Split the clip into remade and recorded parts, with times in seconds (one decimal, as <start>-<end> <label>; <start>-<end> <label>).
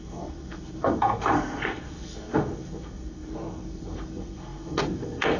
0.0-5.4 remade